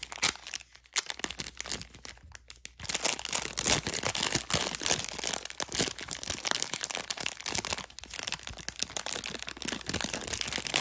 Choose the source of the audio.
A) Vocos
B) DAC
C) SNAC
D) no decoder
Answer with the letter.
D